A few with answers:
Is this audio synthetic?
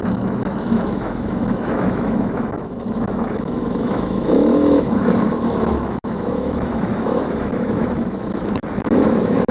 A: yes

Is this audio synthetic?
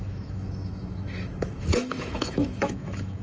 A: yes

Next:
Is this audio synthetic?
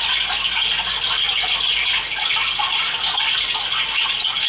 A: no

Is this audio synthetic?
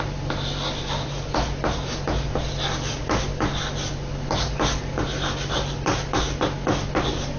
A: no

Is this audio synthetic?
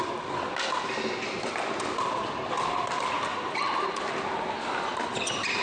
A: no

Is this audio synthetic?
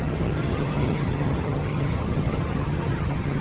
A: yes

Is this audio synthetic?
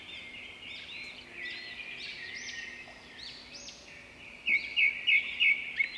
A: no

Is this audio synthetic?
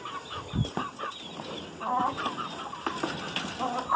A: no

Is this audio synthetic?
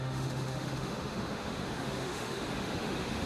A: yes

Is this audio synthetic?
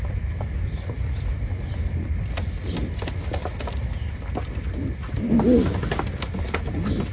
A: no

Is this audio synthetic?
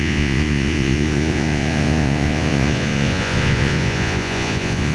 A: yes